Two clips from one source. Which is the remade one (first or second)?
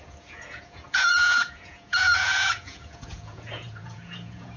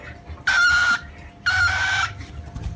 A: first